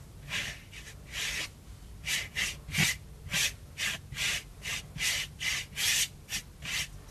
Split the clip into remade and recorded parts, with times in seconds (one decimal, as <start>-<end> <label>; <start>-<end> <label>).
0.0-4.5 recorded; 4.5-5.4 remade; 5.4-7.1 recorded